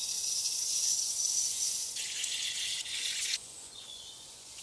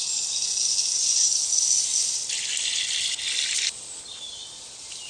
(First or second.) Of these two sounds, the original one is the second